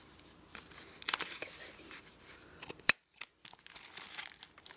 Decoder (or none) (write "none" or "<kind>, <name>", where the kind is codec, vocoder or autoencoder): none